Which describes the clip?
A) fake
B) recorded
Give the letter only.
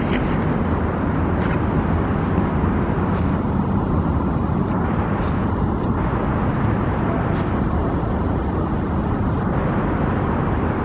B